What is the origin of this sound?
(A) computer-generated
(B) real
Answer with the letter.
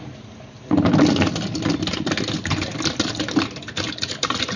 B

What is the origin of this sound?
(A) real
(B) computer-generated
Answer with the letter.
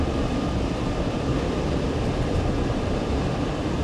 B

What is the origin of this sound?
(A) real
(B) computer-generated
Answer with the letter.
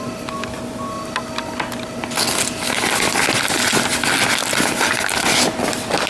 A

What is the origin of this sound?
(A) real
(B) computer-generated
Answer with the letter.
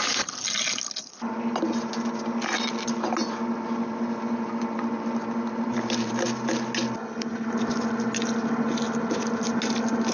A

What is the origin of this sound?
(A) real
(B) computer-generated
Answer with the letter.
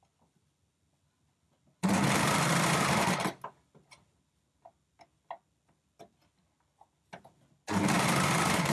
A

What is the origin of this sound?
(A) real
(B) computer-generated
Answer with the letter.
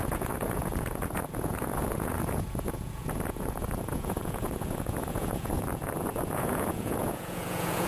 B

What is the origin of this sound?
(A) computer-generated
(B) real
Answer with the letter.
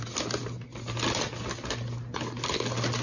B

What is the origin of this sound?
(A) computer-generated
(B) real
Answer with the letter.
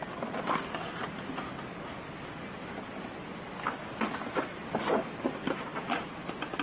B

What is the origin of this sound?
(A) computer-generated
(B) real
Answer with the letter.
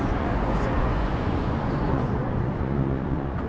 A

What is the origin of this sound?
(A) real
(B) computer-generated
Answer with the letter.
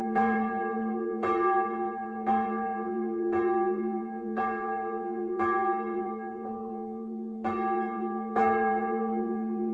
B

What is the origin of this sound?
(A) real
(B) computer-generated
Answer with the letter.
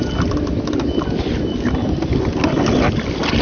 A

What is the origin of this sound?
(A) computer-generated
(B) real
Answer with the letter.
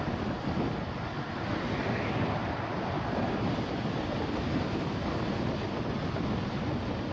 B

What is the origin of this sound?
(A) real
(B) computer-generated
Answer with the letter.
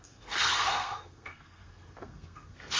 B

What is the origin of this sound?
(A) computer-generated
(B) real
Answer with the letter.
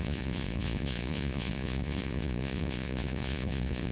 A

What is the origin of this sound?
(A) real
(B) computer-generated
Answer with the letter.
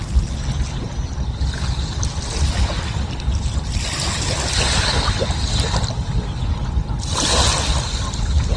A